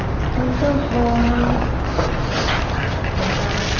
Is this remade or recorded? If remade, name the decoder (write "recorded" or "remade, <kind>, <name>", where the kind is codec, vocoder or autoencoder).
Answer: recorded